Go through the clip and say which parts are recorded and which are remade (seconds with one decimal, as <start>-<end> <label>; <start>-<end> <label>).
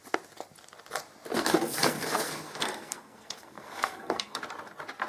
0.0-1.3 recorded; 1.3-4.4 remade; 4.4-5.1 recorded